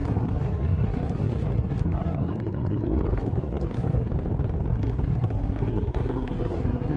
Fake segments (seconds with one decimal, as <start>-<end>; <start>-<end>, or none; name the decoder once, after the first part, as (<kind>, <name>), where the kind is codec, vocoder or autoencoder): 0.0-4.1 (codec, SNAC); 4.7-7.0

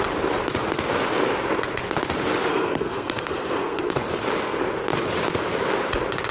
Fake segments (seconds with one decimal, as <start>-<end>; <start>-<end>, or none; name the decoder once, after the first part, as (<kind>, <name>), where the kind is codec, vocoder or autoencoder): 2.5-3.9 (codec, SNAC)